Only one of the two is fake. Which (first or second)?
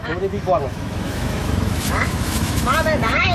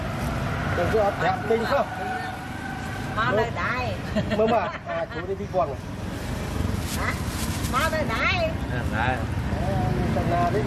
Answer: first